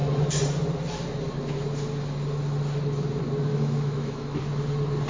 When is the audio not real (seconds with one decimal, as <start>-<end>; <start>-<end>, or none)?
3.5-4.4